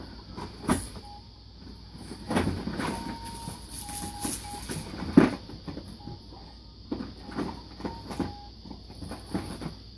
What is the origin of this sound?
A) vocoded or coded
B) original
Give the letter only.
B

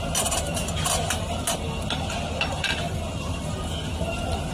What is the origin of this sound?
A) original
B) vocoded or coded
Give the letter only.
A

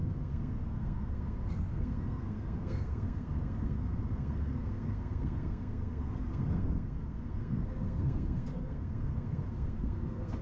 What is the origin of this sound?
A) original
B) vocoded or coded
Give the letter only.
B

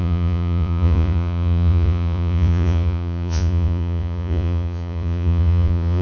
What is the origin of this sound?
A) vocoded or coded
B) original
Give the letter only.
A